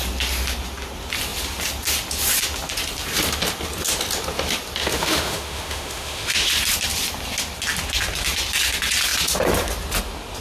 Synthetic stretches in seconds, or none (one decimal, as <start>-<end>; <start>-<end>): 4.8-6.5